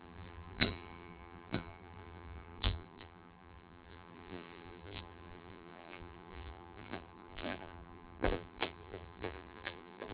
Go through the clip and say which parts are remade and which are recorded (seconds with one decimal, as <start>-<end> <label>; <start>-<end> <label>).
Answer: 0.0-10.1 remade

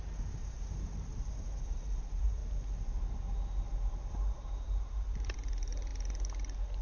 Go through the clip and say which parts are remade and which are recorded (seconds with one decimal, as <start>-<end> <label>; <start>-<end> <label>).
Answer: 0.0-2.4 remade; 2.4-4.1 recorded; 4.1-5.9 remade; 5.9-6.8 recorded

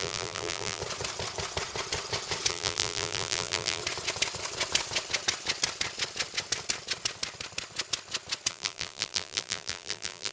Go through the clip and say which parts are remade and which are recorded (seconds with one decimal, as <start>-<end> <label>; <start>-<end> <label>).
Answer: 0.0-0.8 remade; 0.8-2.5 recorded; 2.5-3.8 remade; 3.8-8.5 recorded; 8.5-10.3 remade

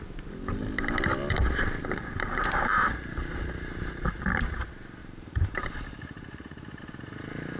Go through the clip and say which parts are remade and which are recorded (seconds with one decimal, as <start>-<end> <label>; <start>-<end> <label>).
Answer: 0.0-1.8 recorded; 1.8-4.5 remade; 4.5-5.0 recorded; 5.0-6.8 remade; 6.8-7.6 recorded

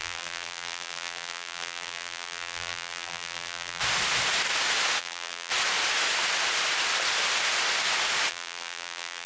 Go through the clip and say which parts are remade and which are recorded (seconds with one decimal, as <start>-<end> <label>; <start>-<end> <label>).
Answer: 0.0-3.8 remade; 3.8-5.0 recorded; 5.0-5.5 remade; 5.5-8.3 recorded; 8.3-9.3 remade